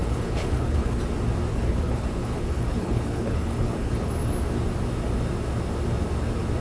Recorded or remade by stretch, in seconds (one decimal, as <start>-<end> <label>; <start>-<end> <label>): 0.0-1.0 remade; 1.0-1.5 recorded; 1.5-4.1 remade; 4.1-6.6 recorded

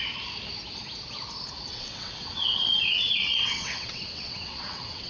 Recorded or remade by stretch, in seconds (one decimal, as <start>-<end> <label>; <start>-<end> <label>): 0.0-1.7 recorded; 1.7-5.1 remade

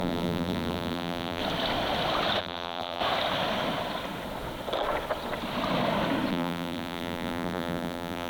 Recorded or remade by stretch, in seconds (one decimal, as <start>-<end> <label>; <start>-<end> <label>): 0.0-1.4 remade; 1.4-2.4 recorded; 2.4-3.0 remade; 3.0-6.3 recorded; 6.3-8.3 remade

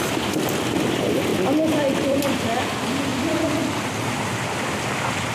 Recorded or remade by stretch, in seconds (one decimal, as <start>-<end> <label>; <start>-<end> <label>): 0.0-5.3 recorded

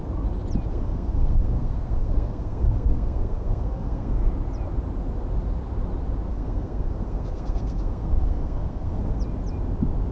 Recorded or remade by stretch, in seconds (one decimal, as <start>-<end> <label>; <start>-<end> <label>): 0.0-0.7 recorded; 0.7-4.3 remade; 4.3-6.3 recorded; 6.3-9.2 remade; 9.2-10.1 recorded

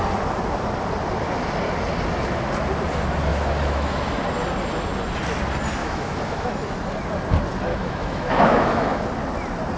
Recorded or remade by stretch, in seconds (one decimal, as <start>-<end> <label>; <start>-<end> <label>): 0.0-3.3 recorded; 3.3-3.9 remade; 3.9-5.8 recorded; 5.8-6.5 remade; 6.5-7.7 recorded; 7.7-9.0 remade; 9.0-9.8 recorded

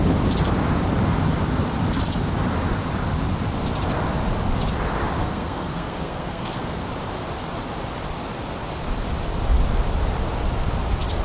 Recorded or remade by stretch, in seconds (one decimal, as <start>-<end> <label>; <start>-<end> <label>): 0.0-5.2 recorded; 5.2-6.8 remade; 6.8-11.2 recorded